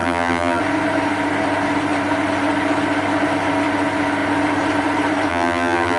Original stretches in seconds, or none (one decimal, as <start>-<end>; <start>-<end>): 0.6-5.3